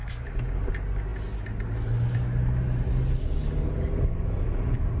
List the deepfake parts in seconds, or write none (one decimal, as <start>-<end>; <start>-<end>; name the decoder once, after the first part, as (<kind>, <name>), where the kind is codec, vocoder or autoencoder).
0.0-0.7 (codec, DAC)